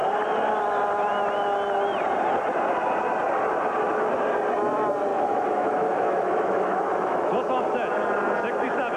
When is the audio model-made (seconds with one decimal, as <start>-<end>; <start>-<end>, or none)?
5.1-7.3